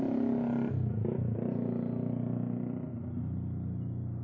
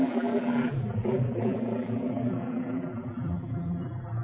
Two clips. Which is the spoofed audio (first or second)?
second